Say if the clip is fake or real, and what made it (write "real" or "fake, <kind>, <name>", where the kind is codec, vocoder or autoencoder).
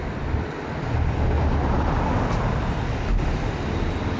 real